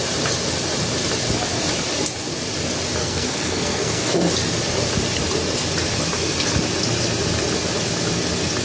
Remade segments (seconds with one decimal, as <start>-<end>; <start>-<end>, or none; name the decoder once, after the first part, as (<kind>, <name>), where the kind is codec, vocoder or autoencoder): 3.0-4.3 (codec, SNAC)